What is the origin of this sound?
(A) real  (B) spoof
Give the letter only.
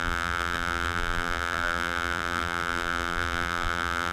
B